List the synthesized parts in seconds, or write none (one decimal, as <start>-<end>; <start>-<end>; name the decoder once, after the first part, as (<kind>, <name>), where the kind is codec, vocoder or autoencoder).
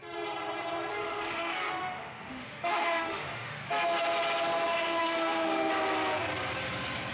0.9-3.6 (autoencoder, DAC-VAE); 4.7-5.7